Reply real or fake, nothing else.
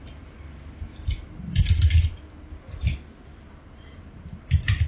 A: real